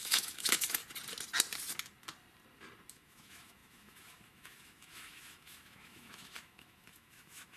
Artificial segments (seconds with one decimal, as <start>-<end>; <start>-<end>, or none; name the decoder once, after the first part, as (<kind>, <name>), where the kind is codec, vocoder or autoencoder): 0.0-0.8 (autoencoder, DAC-VAE); 2.9-7.6

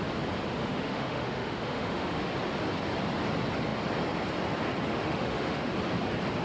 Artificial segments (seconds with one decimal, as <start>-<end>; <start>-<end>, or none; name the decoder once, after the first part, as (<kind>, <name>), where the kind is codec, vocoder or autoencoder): 0.6-2.3 (autoencoder, DAC-VAE); 4.9-5.7